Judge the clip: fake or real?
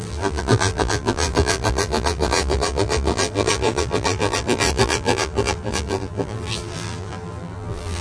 fake